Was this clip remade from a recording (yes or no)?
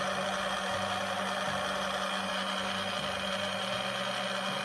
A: no